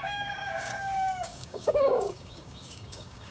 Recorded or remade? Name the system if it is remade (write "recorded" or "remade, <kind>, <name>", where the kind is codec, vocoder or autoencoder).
remade, codec, DAC